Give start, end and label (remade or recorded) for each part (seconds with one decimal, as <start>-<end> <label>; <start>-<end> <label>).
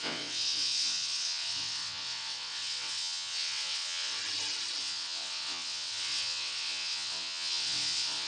0.0-4.2 remade; 4.2-4.8 recorded; 4.8-8.3 remade